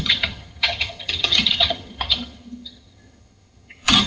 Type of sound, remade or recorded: remade